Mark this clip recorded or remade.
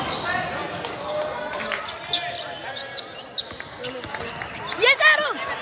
recorded